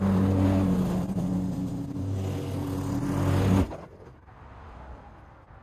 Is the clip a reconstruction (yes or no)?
no